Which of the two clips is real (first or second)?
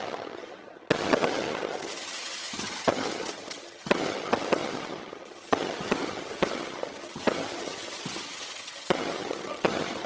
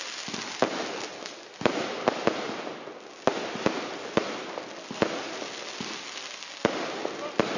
second